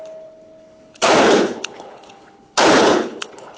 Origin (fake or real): fake